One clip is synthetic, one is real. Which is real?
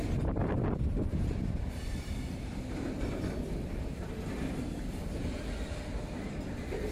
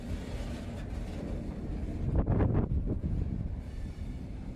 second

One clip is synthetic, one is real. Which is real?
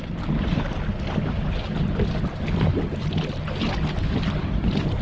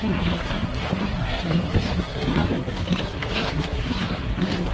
first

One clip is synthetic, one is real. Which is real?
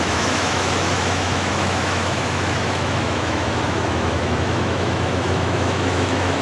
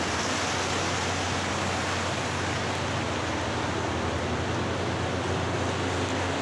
second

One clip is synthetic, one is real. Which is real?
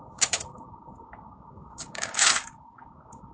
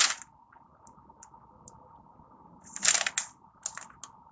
second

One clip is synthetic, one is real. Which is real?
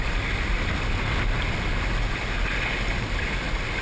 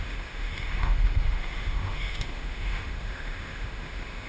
first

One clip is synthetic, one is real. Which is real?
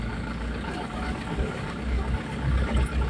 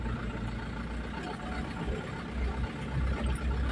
second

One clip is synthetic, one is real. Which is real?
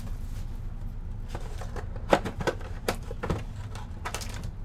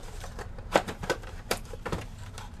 first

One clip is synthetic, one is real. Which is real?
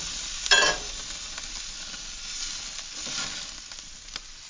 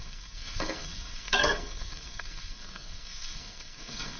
first